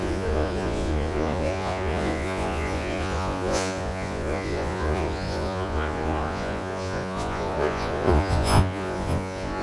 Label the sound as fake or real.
fake